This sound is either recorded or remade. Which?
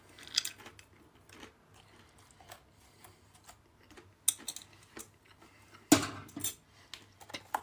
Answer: recorded